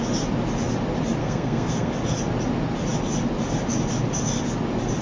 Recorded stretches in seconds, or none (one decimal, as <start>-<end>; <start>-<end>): 0.0-1.2; 1.9-5.0